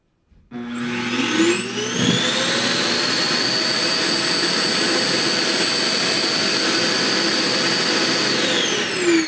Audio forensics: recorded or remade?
recorded